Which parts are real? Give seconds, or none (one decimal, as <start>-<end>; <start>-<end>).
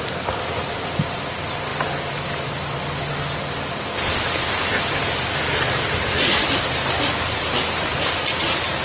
0.0-8.8